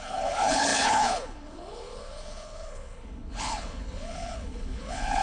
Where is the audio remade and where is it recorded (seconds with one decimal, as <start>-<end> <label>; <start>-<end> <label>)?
0.0-5.2 remade